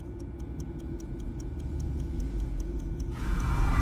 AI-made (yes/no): yes